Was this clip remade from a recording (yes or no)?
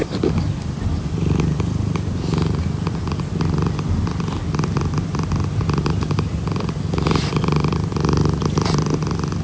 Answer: no